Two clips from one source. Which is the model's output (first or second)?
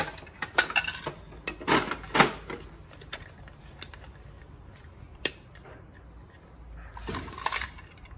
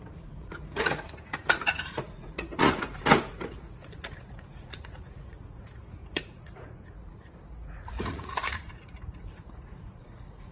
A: second